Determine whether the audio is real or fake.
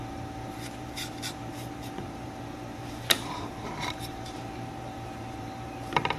fake